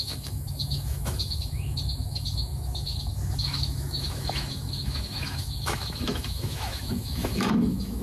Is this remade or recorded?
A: remade